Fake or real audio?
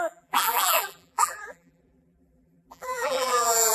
fake